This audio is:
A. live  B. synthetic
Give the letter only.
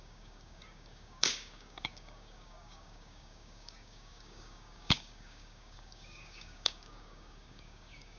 B